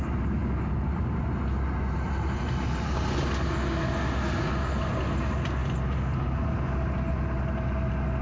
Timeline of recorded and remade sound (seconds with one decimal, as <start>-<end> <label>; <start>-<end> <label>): 0.0-8.2 recorded